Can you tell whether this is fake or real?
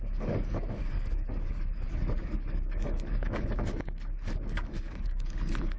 fake